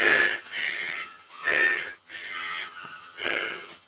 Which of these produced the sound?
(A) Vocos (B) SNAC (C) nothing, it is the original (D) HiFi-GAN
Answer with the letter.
D